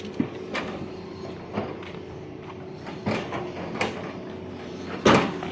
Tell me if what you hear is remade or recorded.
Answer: recorded